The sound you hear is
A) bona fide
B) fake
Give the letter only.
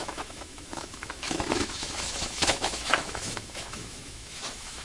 B